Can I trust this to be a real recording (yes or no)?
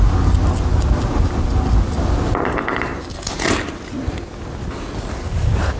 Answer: yes